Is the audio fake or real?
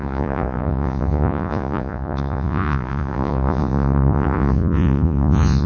fake